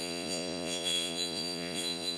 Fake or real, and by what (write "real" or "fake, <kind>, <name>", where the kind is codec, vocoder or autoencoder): fake, vocoder, Vocos